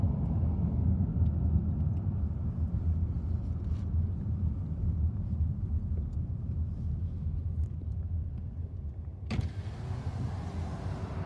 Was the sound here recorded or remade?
recorded